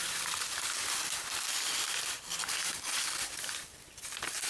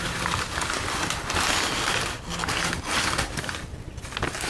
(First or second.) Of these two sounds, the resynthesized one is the first